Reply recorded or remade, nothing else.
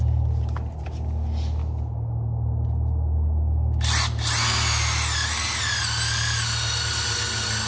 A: recorded